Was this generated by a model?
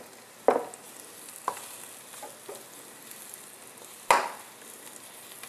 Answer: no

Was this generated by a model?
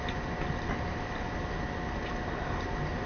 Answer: no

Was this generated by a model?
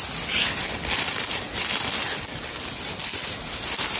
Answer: no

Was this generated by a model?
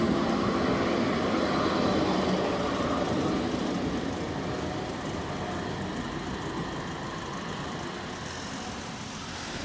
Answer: no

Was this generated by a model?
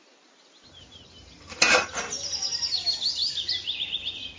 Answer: no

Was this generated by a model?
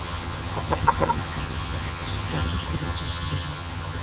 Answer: yes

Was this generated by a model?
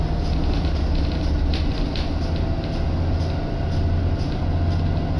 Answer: no